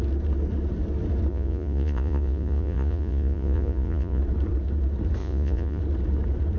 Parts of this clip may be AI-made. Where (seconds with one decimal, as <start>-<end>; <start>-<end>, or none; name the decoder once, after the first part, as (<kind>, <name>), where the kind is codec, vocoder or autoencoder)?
1.3-4.2 (vocoder, Vocos); 5.2-5.8

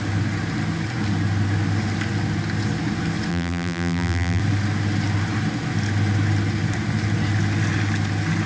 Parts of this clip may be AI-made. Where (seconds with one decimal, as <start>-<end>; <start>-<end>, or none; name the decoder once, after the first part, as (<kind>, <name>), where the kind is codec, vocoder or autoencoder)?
3.3-4.4 (vocoder, BigVGAN v2)

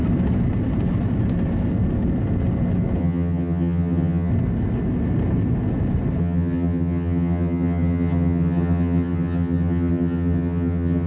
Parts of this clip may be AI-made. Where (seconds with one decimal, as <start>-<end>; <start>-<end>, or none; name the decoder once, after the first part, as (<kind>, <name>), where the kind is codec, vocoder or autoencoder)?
3.0-4.3 (vocoder, HiFi-GAN); 6.2-11.1